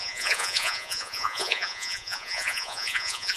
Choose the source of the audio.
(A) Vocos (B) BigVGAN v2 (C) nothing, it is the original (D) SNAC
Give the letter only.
A